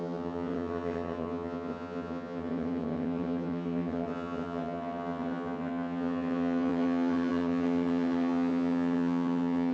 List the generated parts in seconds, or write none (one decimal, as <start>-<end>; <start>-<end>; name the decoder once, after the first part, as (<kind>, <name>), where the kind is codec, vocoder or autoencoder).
0.0-9.7 (vocoder, HiFi-GAN)